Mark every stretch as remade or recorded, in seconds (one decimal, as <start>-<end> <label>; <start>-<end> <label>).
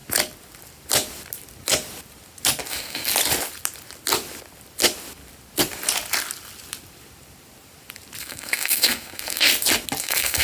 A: 0.0-2.7 recorded; 2.7-3.1 remade; 3.1-8.2 recorded; 8.2-9.5 remade; 9.5-10.0 recorded; 10.0-10.4 remade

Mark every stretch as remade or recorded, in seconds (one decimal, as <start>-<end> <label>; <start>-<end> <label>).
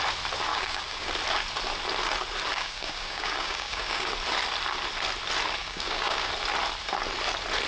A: 0.0-0.5 recorded; 0.5-1.1 remade; 1.1-2.5 recorded; 2.5-4.1 remade; 4.1-5.6 recorded; 5.6-6.3 remade; 6.3-7.7 recorded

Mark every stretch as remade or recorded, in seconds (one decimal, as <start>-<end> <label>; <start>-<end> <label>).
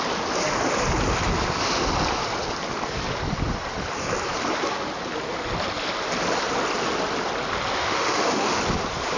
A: 0.0-7.8 recorded; 7.8-8.6 remade; 8.6-9.2 recorded